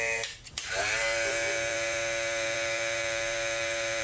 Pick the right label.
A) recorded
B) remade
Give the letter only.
B